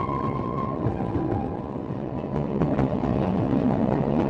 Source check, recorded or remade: remade